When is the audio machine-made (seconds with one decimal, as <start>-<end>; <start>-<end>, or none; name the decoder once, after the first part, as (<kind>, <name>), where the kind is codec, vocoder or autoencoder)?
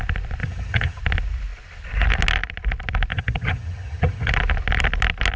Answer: 0.4-1.0 (vocoder, HiFi-GAN); 3.1-4.3